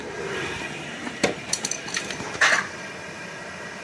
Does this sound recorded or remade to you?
remade